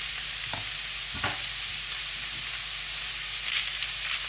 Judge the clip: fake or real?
real